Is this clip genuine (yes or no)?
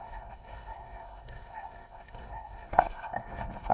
no